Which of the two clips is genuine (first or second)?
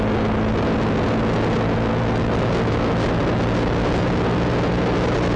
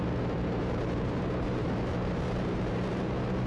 first